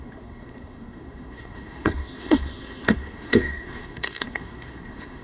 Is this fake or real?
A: fake